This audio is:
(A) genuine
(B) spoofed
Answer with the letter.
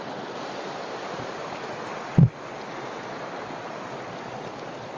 A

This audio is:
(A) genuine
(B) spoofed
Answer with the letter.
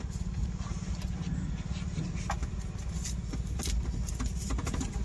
A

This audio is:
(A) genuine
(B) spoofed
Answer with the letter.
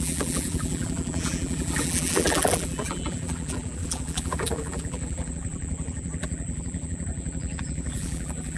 B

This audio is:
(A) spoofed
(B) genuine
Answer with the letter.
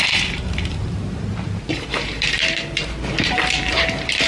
A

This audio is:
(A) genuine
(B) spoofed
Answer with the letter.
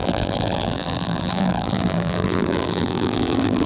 B